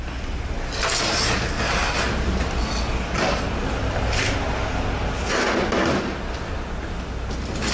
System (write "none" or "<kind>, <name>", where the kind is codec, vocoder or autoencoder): none